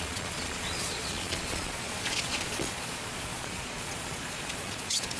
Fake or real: fake